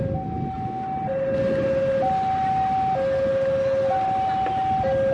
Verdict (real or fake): real